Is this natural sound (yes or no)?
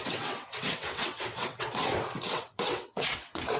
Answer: no